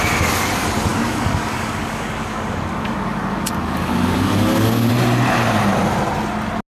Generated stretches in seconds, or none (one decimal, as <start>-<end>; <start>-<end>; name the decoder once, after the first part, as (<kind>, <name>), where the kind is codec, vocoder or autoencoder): 0.9-4.9 (codec, DAC)